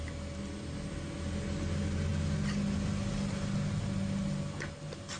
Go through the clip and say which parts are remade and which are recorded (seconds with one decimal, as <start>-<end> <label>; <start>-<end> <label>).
0.0-5.2 recorded